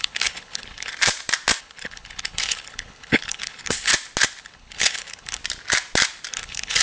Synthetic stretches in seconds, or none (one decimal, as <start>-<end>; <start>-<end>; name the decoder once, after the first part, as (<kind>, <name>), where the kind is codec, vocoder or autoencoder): 0.0-0.9 (codec, HILCodec); 1.6-3.9; 4.4-5.4; 6.3-6.8

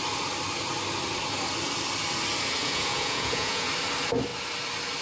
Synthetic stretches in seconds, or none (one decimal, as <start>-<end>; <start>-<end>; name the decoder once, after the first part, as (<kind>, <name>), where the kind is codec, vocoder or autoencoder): 2.6-3.7 (vocoder, Vocos)